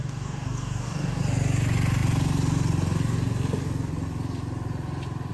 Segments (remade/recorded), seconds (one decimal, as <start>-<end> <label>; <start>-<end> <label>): 0.0-1.2 remade; 1.2-5.3 recorded